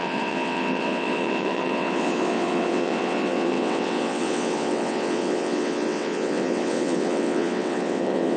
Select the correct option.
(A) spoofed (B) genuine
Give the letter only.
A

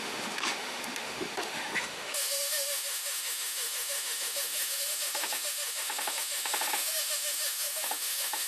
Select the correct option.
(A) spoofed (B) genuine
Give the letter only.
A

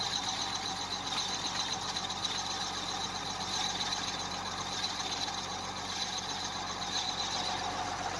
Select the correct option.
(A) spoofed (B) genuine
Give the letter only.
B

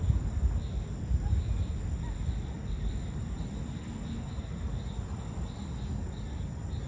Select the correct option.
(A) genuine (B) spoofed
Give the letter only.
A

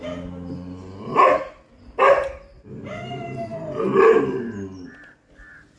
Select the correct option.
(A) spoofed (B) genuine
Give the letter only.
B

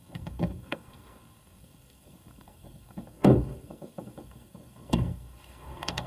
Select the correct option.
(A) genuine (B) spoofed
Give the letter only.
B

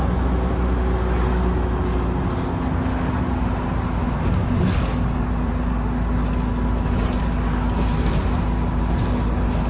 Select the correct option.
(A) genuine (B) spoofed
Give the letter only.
A